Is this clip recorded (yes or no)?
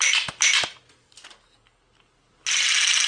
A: yes